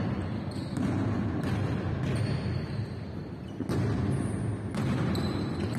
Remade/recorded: recorded